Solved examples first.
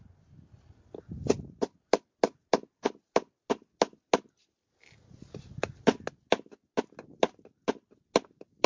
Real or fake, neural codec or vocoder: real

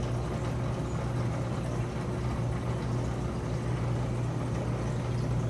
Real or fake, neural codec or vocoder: real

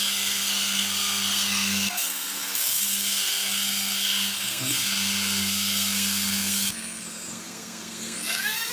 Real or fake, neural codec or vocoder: fake, codec, SNAC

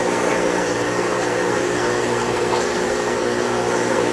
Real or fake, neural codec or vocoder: fake, codec, SNAC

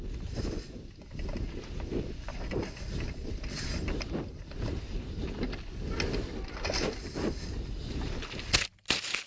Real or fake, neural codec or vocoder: real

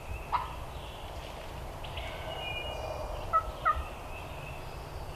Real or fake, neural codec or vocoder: real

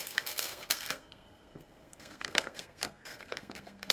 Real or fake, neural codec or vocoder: fake, codec, SNAC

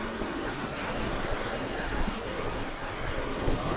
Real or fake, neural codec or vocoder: fake, codec, SNAC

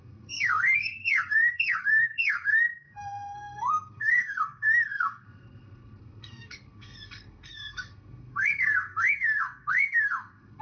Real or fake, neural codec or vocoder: fake, codec, SNAC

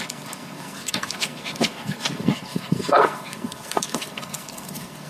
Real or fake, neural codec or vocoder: fake, codec, SNAC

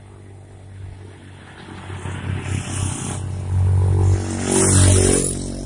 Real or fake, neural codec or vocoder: real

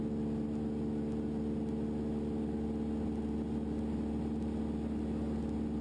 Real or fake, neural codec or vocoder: real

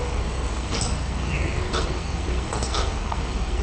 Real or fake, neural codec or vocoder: fake, codec, SNAC